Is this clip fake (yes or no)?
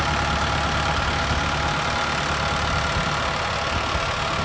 no